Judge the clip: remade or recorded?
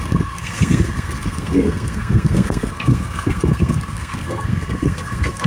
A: remade